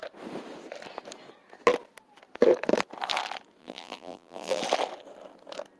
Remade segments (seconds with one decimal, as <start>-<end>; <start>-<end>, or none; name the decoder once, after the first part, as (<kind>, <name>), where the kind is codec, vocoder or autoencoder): 3.6-4.6 (vocoder, BigVGAN v2)